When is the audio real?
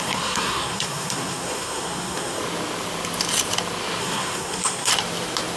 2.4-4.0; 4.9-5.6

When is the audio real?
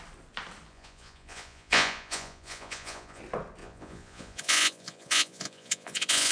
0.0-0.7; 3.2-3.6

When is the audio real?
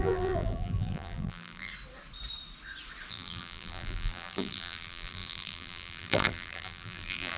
1.7-3.1